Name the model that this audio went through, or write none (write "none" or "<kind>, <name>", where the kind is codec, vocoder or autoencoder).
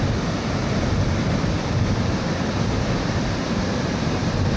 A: vocoder, BigVGAN v2